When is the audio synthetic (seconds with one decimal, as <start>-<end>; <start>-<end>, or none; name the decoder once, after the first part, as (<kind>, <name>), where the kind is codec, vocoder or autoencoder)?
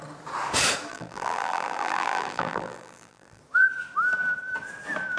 0.9-3.4 (vocoder, BigVGAN v2)